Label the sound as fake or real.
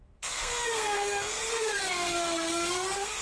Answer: fake